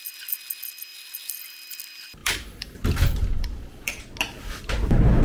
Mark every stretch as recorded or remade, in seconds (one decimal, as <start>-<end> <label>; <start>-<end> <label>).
0.0-0.9 recorded; 0.9-1.8 remade; 1.8-2.2 recorded; 2.2-3.9 remade; 3.9-5.2 recorded